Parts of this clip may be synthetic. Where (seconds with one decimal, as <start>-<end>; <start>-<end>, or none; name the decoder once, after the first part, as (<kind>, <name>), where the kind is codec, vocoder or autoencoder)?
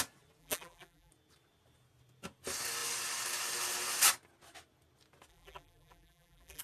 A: 0.4-1.1 (vocoder, BigVGAN v2); 5.3-6.6